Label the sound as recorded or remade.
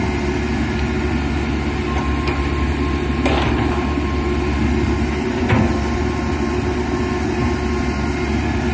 recorded